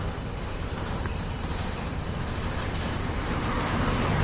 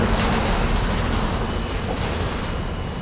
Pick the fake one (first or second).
first